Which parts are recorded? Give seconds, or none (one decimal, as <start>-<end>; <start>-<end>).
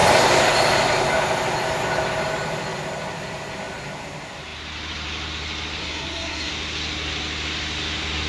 0.0-5.8; 6.5-8.3